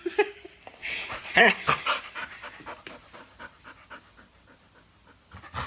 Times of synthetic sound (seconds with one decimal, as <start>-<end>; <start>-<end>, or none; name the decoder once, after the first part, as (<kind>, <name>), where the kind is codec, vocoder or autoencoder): 0.8-1.4 (vocoder, Vocos)